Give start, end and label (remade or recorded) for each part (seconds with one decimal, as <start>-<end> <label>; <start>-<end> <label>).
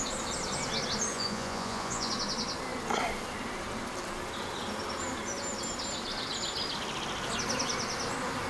0.0-1.1 recorded; 1.1-2.1 remade; 2.1-8.5 recorded